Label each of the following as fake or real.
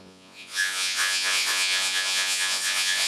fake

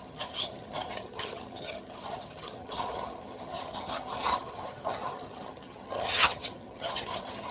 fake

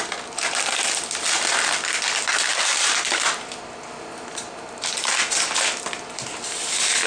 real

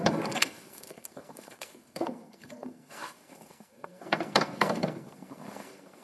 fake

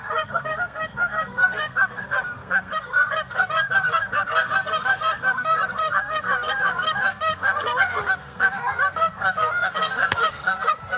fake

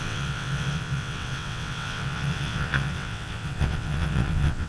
fake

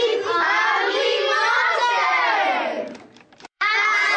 fake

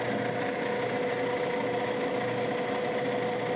real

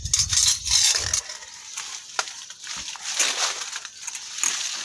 real